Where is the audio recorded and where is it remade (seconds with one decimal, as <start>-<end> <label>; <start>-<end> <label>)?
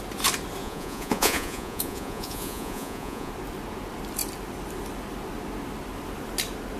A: 0.0-0.6 recorded; 0.6-3.3 remade; 3.3-6.8 recorded